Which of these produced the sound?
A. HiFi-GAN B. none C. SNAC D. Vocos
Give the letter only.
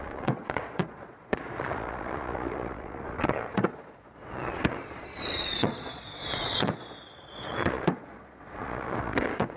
D